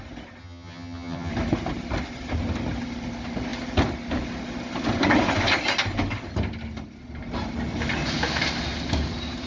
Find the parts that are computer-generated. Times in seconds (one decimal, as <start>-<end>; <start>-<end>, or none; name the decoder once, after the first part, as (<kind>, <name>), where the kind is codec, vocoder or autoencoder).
0.4-1.3 (vocoder, HiFi-GAN)